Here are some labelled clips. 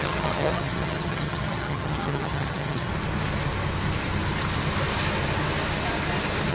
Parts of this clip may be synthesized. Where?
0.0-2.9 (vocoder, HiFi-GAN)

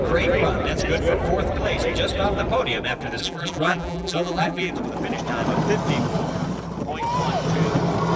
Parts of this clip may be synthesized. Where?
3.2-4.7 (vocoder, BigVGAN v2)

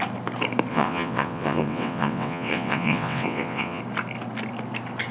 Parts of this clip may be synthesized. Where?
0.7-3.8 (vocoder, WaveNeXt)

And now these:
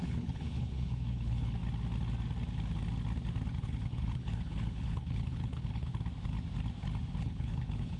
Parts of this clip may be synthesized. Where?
0.0-1.6 (codec, HILCodec); 3.6-5.9; 7.2-8.0

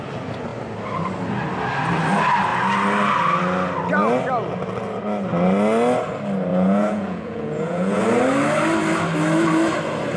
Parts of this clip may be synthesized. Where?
6.5-8.0 (vocoder, Vocos)